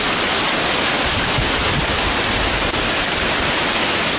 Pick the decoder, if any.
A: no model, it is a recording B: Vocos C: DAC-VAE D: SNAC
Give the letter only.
A